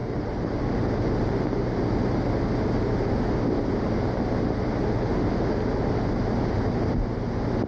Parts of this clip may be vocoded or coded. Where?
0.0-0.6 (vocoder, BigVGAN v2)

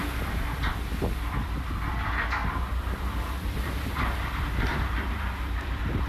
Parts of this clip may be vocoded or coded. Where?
2.4-6.1 (vocoder, BigVGAN v2)

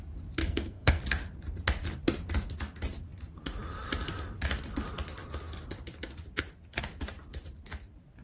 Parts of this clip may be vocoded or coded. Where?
0.4-1.0 (codec, SNAC)